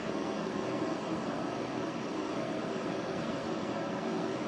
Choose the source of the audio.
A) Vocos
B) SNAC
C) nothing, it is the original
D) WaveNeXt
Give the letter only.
B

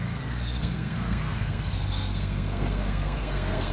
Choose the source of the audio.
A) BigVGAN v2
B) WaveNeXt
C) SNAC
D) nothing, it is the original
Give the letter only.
C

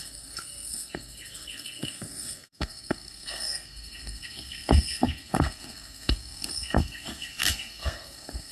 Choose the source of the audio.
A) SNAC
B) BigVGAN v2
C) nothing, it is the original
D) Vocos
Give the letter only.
A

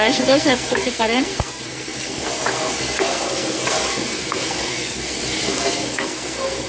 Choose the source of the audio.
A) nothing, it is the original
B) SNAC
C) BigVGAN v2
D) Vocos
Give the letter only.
B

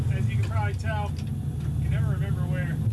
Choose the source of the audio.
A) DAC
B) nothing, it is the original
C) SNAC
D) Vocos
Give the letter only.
B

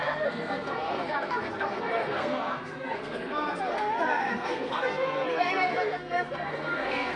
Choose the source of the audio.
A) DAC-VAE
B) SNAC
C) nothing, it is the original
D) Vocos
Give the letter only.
B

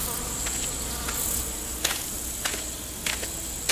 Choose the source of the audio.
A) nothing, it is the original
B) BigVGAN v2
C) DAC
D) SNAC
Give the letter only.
A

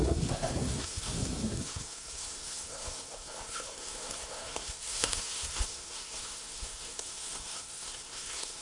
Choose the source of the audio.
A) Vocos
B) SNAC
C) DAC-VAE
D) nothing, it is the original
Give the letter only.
B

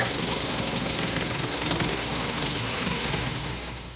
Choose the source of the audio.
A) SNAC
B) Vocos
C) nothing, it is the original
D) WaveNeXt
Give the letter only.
A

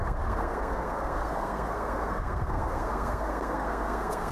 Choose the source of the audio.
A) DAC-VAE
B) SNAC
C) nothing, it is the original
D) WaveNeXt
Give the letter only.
B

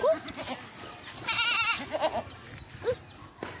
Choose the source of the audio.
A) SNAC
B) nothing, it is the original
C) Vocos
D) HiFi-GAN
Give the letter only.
B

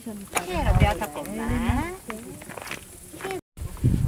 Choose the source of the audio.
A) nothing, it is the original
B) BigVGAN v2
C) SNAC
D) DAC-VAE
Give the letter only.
A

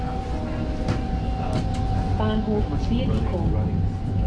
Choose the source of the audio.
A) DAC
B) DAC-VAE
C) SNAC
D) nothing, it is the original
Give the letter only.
D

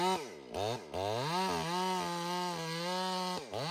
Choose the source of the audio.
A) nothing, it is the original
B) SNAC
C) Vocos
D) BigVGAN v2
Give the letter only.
A